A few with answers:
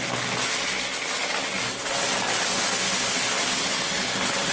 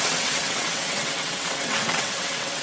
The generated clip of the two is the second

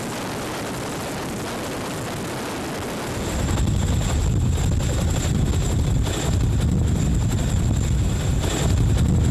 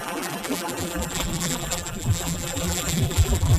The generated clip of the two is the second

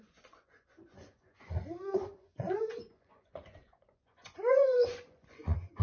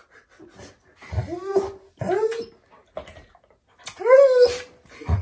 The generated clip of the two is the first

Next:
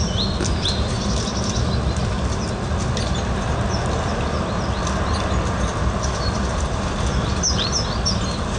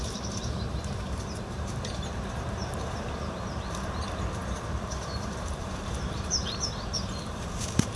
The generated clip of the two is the second